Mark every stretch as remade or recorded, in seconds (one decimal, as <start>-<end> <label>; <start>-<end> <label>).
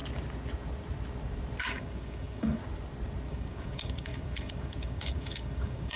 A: 0.0-1.6 recorded; 1.6-2.6 remade; 2.6-3.3 recorded; 3.3-6.0 remade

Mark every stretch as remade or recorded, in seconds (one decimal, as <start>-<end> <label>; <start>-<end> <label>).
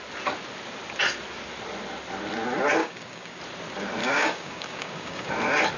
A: 0.0-2.8 recorded; 2.8-3.4 remade; 3.4-4.0 recorded; 4.0-5.3 remade; 5.3-5.8 recorded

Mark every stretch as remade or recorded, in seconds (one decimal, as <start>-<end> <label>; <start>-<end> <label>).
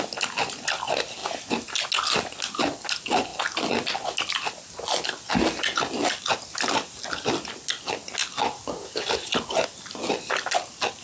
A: 0.0-11.0 recorded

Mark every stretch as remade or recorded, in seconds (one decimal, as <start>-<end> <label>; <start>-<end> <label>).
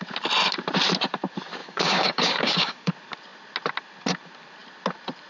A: 0.0-1.6 recorded; 1.6-2.9 remade; 2.9-5.3 recorded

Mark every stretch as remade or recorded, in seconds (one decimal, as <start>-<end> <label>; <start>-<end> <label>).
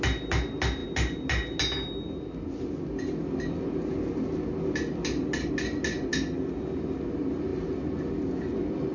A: 0.0-8.9 recorded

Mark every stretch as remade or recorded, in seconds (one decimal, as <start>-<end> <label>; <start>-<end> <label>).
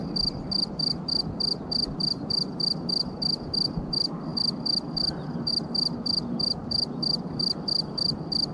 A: 0.0-8.5 recorded